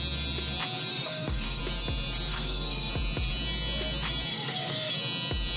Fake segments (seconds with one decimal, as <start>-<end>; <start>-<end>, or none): 0.9-1.6; 2.3-2.9; 4.3-4.9

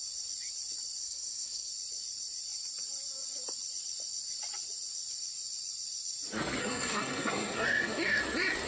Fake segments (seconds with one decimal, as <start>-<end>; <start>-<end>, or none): 1.0-1.7; 6.6-8.2

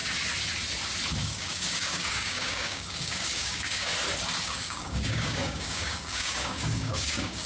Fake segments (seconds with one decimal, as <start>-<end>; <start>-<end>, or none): 1.2-3.9; 4.4-7.5

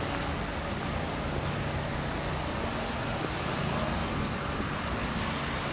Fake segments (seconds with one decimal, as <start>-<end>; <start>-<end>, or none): none

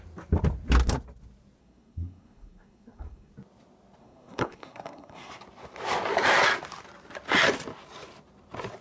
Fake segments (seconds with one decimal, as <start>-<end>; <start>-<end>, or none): 1.6-3.3; 4.0-5.3

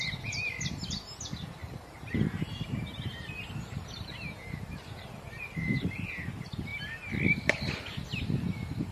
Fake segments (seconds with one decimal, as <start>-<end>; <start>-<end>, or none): 1.6-6.1

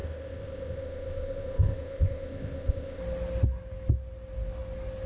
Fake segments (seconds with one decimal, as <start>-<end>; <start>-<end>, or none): 0.0-3.0